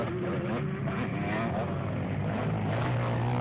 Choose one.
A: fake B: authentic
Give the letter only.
B